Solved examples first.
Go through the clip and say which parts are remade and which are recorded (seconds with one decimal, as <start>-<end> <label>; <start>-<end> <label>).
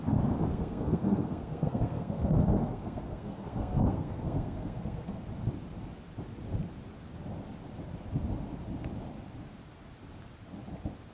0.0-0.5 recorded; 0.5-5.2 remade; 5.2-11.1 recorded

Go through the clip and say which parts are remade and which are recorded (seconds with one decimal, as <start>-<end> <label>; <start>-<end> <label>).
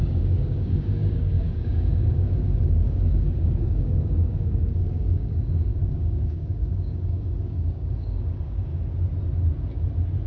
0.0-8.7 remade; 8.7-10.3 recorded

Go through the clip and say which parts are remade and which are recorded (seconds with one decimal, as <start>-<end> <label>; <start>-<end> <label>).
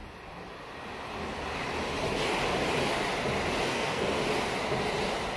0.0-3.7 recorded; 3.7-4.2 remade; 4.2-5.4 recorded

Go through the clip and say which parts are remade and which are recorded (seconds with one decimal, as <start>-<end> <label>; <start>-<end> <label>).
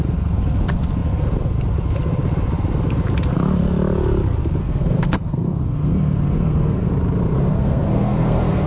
0.0-4.6 recorded; 4.6-6.9 remade; 6.9-7.5 recorded; 7.5-8.7 remade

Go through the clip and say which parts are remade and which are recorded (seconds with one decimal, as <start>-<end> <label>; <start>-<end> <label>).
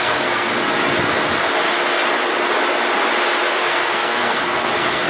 0.0-0.5 remade; 0.5-3.6 recorded; 3.6-5.1 remade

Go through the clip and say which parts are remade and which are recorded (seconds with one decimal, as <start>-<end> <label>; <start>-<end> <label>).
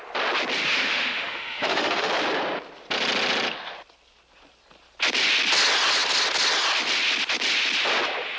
0.0-0.7 recorded; 0.7-2.1 remade; 2.1-8.4 recorded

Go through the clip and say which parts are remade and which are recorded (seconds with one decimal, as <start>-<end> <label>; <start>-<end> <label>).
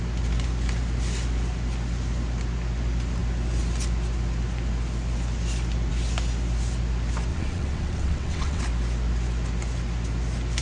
0.0-7.3 recorded; 7.3-8.6 remade; 8.6-10.6 recorded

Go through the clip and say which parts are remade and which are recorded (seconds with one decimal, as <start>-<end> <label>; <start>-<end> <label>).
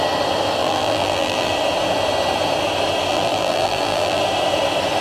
0.0-0.6 recorded; 0.6-1.5 remade; 1.5-3.1 recorded; 3.1-4.2 remade; 4.2-5.0 recorded